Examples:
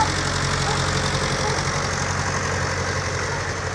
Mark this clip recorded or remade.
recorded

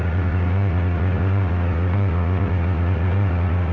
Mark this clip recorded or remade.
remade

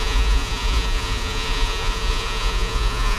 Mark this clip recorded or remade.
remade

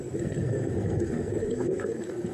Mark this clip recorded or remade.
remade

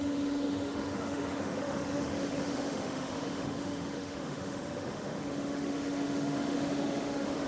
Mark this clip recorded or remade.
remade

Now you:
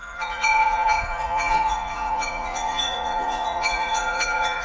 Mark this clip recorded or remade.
remade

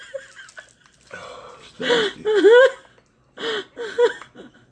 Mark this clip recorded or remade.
recorded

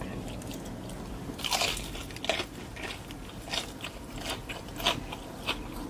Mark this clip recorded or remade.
recorded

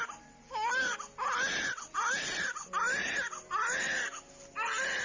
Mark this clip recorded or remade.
recorded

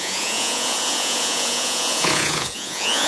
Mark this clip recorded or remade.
remade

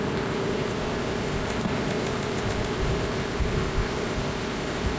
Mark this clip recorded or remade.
remade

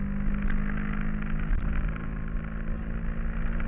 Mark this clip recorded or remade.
recorded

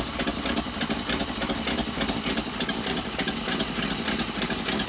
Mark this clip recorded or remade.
recorded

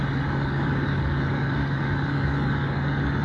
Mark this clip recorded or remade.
remade